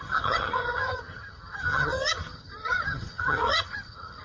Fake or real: fake